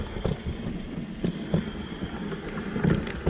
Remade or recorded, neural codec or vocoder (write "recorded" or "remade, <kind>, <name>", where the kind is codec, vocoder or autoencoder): recorded